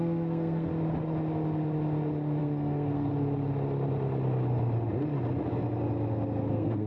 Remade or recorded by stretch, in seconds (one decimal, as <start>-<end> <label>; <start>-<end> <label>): 0.0-0.7 remade; 0.7-2.4 recorded; 2.4-3.1 remade; 3.1-6.5 recorded; 6.5-6.9 remade